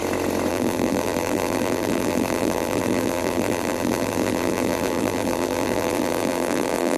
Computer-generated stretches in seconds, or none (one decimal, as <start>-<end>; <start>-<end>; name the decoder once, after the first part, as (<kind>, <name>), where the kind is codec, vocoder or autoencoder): 0.5-7.0 (vocoder, BigVGAN v2)